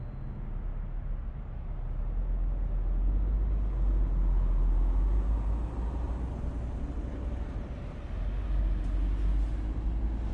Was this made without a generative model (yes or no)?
yes